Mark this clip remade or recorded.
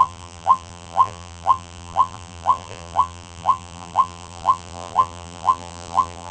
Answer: remade